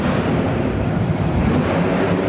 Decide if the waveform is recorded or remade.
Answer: remade